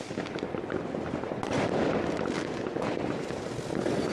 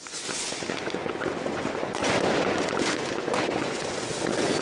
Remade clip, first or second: second